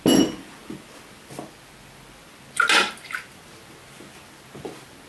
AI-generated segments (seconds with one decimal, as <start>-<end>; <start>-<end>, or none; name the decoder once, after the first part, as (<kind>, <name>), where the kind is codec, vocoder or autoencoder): none